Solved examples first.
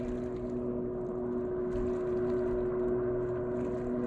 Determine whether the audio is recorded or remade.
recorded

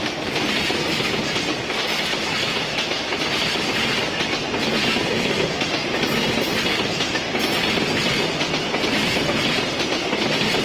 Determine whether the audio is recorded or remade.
recorded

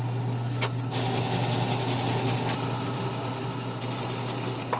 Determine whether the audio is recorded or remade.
recorded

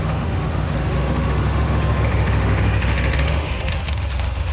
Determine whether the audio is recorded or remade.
remade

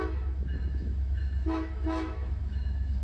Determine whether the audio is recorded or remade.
remade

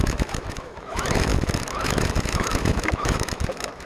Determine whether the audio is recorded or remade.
remade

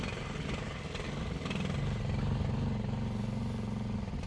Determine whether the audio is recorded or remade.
recorded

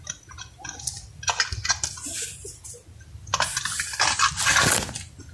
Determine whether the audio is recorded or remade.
recorded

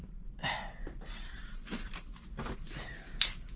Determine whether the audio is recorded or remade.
recorded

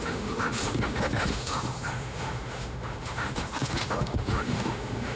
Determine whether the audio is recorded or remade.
remade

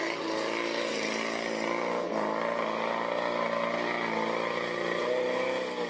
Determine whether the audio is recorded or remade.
recorded